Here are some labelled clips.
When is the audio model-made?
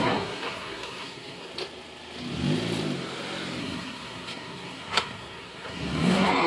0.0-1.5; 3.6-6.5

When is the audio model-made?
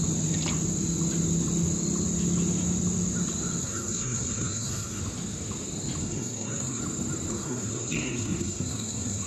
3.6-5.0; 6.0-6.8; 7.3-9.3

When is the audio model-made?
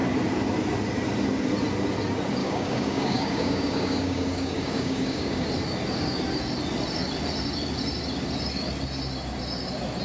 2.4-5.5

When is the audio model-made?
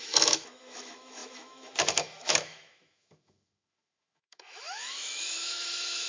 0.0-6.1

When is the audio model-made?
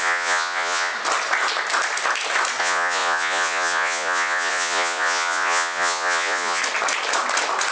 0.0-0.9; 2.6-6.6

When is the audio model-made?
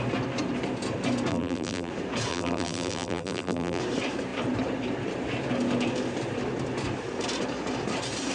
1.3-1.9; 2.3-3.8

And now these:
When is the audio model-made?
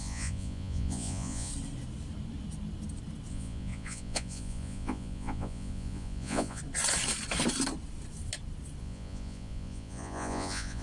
0.0-1.5; 3.3-6.6; 8.8-10.8